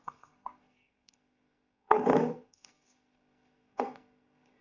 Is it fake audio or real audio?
fake